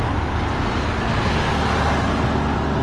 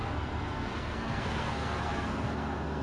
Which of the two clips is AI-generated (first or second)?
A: second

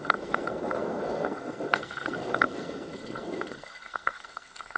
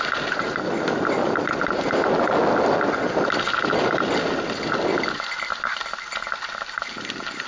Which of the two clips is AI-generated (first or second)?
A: first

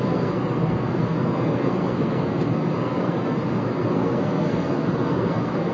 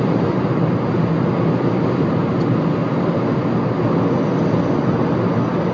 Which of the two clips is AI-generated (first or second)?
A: first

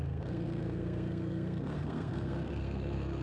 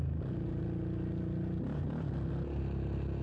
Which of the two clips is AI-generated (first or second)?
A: first